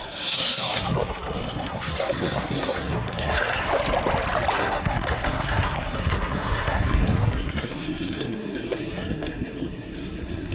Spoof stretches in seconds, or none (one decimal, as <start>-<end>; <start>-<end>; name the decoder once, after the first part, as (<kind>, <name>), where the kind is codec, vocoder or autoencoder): 0.0-3.8 (codec, SNAC); 4.5-10.5